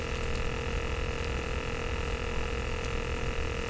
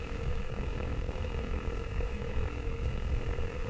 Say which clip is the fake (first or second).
second